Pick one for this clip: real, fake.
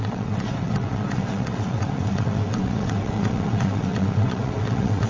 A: fake